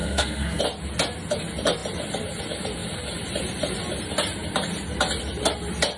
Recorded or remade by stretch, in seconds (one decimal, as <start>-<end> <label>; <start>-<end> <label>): 0.0-0.6 remade; 0.6-6.0 recorded